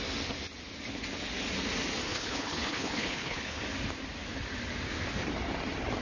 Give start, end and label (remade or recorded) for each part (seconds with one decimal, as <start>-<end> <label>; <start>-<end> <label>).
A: 0.0-2.1 recorded; 2.1-3.6 remade; 3.6-6.0 recorded